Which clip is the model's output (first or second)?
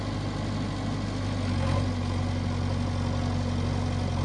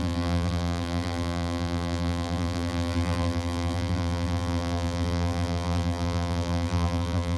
second